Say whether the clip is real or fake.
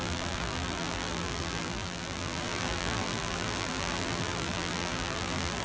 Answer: fake